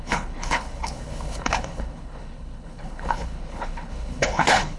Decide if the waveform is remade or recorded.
remade